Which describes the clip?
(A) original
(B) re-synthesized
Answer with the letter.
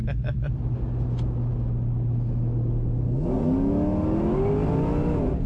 A